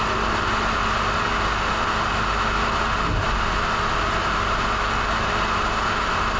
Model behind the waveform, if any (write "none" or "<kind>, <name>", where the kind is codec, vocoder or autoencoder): none